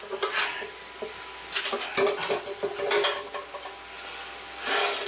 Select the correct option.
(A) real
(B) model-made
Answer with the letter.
A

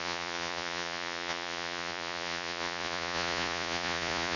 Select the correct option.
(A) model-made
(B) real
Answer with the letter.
A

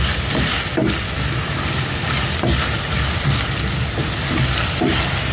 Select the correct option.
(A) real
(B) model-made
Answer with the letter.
A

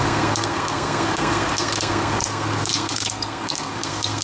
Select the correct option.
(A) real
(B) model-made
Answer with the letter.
B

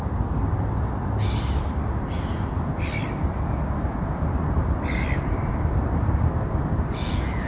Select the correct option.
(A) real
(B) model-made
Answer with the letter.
A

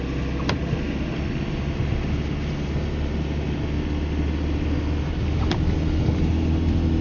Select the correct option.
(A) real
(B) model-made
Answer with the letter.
A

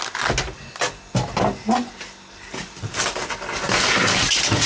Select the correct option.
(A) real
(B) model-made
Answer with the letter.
A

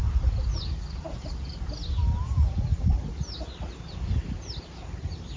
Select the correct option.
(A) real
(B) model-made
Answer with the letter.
A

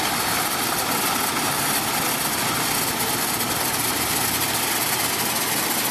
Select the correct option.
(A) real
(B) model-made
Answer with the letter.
A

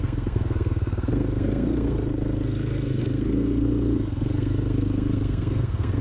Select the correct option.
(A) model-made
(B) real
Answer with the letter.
A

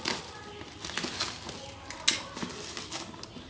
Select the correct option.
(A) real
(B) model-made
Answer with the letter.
A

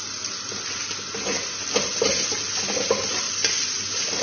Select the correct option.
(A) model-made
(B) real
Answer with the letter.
B